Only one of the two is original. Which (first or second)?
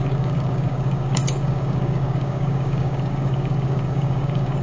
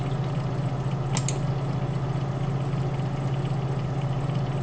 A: second